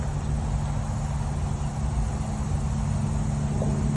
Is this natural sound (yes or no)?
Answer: yes